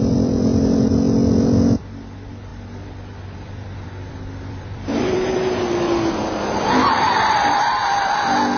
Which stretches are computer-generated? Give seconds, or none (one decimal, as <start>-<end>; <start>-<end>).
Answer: 0.0-7.8